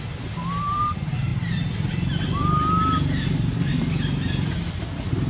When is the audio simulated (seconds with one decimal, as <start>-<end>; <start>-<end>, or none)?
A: none